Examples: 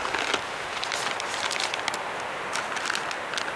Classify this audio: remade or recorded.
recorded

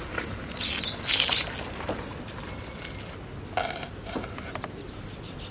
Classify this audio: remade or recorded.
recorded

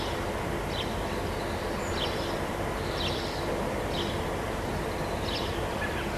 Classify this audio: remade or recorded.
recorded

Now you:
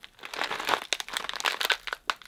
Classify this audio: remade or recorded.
recorded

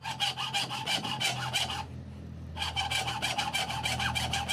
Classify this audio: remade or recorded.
recorded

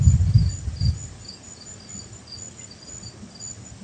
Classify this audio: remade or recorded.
recorded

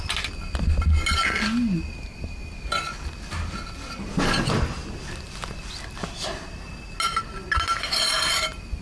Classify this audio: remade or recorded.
recorded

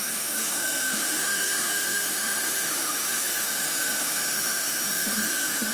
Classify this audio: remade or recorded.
remade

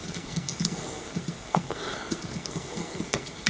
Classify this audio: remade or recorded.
remade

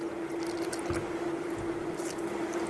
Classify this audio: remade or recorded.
recorded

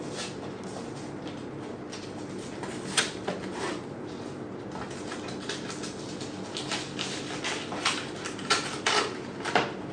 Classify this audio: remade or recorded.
recorded